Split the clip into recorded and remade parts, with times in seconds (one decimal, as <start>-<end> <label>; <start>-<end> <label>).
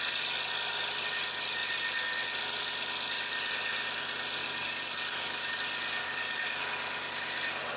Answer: 0.0-4.4 recorded; 4.4-5.5 remade; 5.5-6.0 recorded; 6.0-6.6 remade; 6.6-7.8 recorded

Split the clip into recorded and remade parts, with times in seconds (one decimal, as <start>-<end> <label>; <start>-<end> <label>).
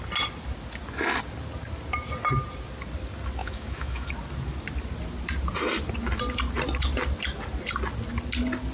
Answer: 0.0-3.4 recorded; 3.4-4.1 remade; 4.1-8.7 recorded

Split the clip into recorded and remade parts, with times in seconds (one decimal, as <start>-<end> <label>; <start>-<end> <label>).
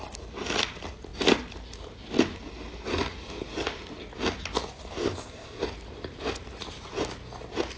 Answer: 0.0-5.0 recorded; 5.0-5.6 remade; 5.6-7.8 recorded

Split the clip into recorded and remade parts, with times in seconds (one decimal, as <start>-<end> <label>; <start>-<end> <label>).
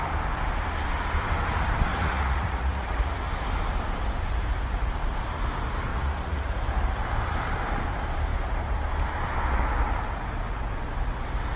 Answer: 0.0-1.9 recorded; 1.9-3.3 remade; 3.3-5.9 recorded; 5.9-6.6 remade; 6.6-11.6 recorded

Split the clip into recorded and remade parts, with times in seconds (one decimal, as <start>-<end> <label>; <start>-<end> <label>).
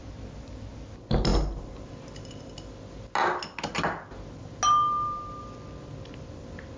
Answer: 0.0-6.8 recorded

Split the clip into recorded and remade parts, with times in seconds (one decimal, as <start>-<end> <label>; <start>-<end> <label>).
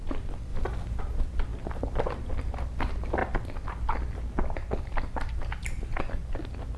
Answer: 0.0-6.8 recorded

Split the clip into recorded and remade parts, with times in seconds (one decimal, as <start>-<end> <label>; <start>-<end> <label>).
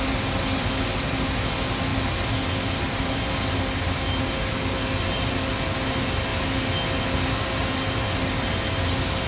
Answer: 0.0-9.3 recorded